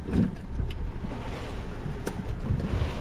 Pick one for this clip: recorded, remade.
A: recorded